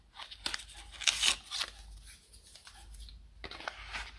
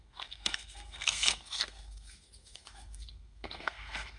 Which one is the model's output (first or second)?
second